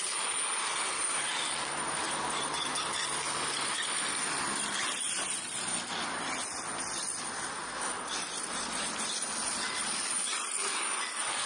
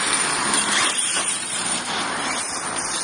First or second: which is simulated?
second